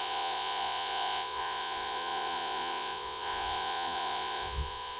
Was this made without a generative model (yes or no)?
no